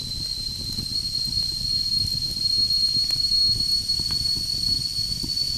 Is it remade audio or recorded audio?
recorded